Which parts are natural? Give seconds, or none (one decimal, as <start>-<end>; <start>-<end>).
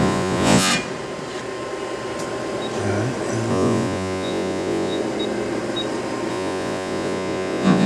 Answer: 0.7-3.5; 5.0-6.3